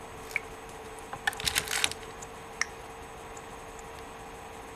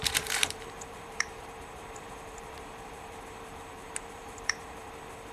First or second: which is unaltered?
first